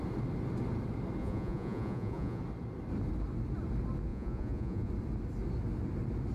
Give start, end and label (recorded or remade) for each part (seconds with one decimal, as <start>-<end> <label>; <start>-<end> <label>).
0.0-1.2 recorded; 1.2-2.4 remade; 2.4-4.1 recorded; 4.1-4.9 remade; 4.9-6.3 recorded